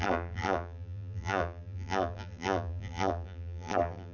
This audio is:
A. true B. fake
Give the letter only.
B